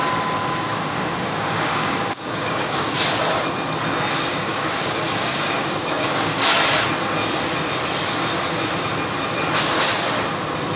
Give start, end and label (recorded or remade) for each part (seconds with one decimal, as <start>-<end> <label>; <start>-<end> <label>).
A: 0.0-0.7 recorded; 0.7-3.0 remade; 3.0-4.3 recorded; 4.3-6.4 remade; 6.4-10.8 recorded